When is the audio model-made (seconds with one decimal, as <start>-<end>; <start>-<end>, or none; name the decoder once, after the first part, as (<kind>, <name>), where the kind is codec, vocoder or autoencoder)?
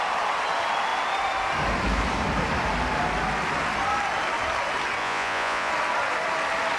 5.0-5.7 (vocoder, Vocos)